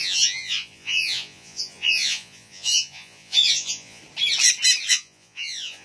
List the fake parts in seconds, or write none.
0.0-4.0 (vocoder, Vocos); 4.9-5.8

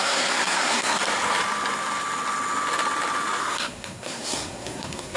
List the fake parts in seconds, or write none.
0.0-1.0 (codec, SNAC); 3.4-5.2